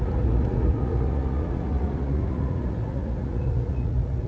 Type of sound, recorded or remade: remade